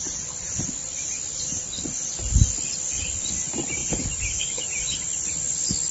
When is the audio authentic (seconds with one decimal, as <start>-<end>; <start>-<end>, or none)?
0.0-0.8; 2.3-3.8; 5.3-5.9